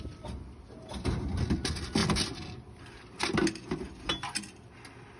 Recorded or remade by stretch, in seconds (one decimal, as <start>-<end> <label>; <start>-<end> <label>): 0.0-5.2 recorded